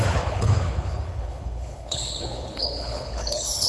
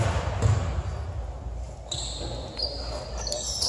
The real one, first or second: second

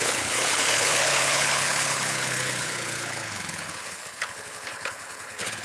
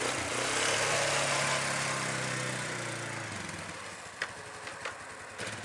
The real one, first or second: second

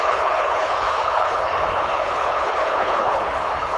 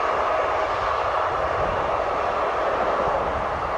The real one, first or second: second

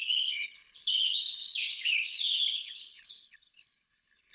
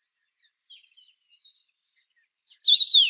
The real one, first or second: second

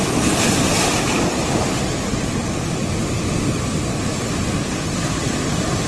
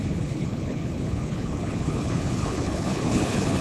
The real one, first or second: first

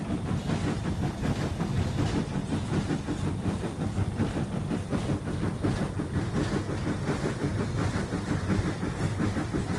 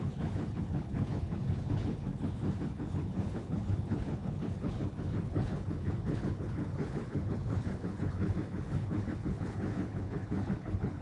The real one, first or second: first